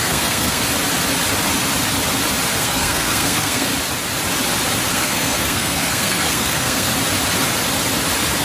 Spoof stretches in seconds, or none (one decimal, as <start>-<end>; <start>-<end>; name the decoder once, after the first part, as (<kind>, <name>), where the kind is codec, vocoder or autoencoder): 0.0-0.6 (codec, SNAC); 2.6-3.7; 4.9-6.9